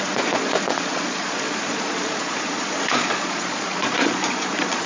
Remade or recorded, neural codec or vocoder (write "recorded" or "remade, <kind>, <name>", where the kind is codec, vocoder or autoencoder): remade, vocoder, Vocos